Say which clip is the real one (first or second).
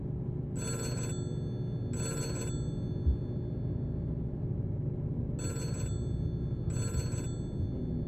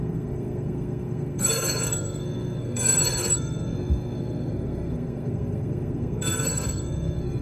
first